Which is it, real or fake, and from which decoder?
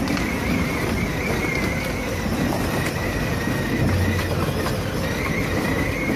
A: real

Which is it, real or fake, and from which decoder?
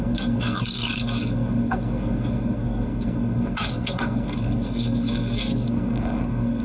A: fake, codec, SNAC